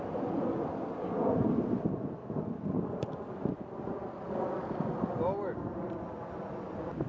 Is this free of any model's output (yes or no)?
yes